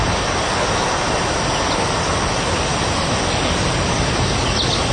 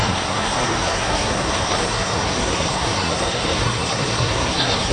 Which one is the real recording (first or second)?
first